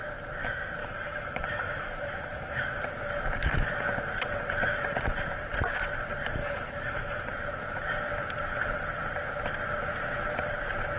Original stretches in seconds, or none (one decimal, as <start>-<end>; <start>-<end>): 0.0-0.8; 2.8-6.4; 7.3-11.0